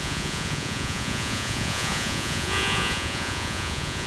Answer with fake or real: fake